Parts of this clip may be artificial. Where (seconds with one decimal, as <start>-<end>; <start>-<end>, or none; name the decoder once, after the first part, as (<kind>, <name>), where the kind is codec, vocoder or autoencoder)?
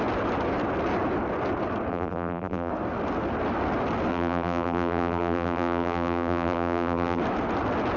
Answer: 1.9-2.7 (vocoder, BigVGAN v2); 4.1-7.2